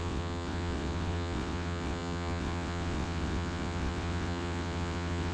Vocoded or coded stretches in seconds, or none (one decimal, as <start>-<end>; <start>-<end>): 0.0-5.3